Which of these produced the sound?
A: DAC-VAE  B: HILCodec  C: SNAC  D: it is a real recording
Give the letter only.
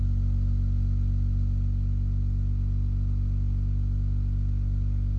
D